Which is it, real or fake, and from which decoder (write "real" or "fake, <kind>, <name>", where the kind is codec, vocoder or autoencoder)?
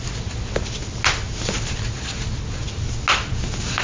real